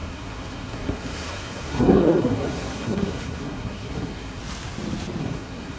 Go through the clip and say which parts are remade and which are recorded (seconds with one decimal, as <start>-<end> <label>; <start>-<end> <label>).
0.0-4.4 remade; 4.4-5.2 recorded; 5.2-5.8 remade